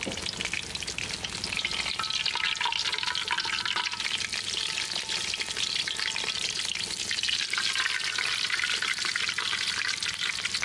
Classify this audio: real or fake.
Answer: real